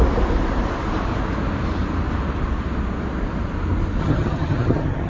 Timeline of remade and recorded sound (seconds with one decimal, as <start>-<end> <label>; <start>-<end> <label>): 0.0-4.0 recorded; 4.0-5.1 remade